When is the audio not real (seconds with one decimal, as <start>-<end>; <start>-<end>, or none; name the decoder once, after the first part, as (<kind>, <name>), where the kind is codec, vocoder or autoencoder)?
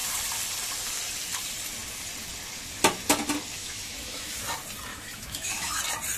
3.6-4.3 (autoencoder, DAC-VAE); 4.9-5.8